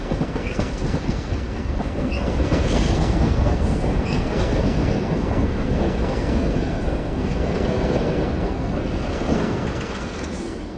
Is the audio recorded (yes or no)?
no